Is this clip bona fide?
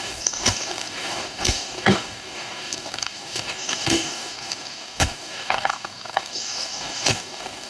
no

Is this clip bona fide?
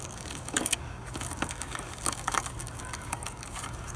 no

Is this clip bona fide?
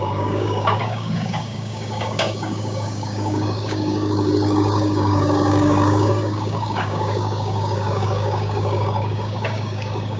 no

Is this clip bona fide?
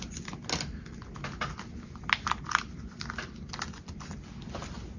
yes